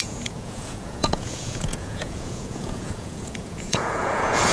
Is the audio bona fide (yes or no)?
no